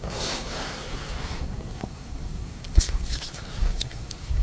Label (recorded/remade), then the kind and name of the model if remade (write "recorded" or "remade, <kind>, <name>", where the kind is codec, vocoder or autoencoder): remade, codec, SNAC